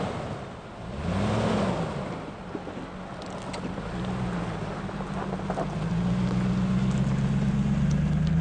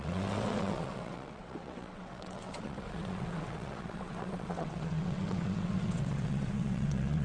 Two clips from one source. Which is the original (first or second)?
first